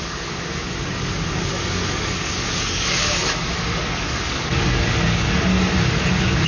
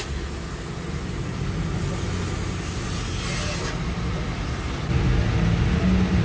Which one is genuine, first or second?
second